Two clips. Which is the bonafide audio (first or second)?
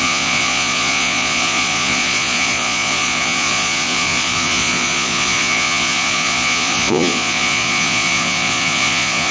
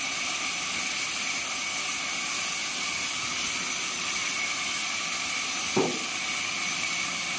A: second